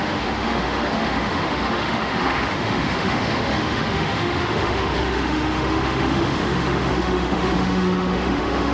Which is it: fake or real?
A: fake